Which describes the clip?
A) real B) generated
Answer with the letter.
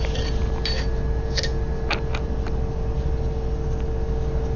A